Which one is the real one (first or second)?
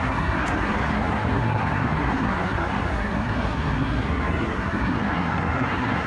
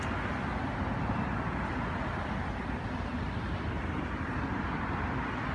second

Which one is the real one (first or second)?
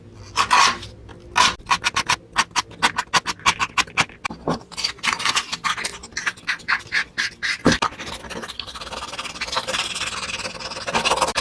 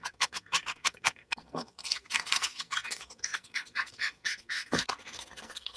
first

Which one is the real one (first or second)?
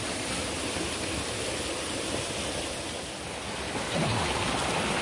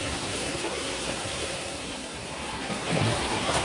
first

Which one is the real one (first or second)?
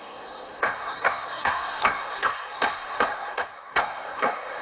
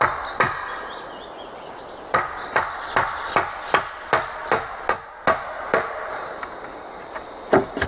second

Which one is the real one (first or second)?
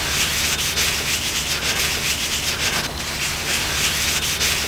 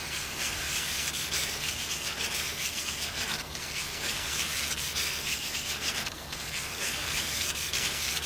first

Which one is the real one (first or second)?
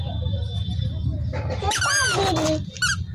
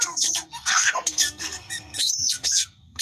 first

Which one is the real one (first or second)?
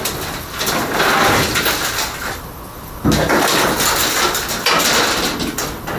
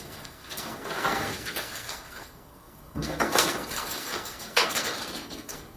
first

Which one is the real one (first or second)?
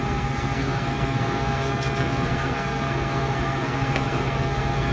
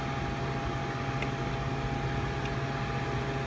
second